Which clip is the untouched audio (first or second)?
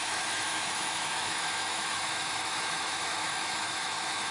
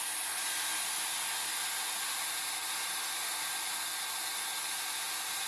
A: second